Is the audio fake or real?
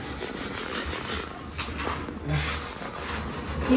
real